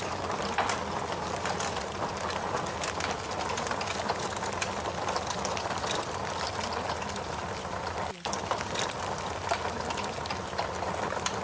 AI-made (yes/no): no